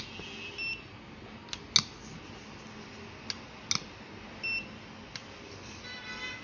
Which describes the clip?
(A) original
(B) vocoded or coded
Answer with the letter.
A